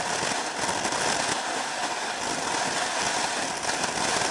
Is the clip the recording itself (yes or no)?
yes